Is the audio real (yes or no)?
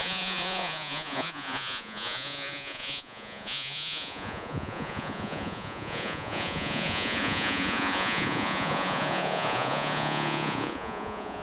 no